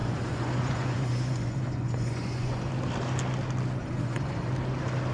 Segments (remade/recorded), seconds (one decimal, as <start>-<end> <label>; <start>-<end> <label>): 0.0-2.7 remade; 2.7-3.8 recorded; 3.8-4.5 remade; 4.5-5.1 recorded